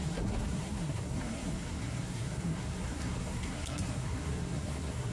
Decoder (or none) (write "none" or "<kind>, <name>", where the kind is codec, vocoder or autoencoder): codec, SNAC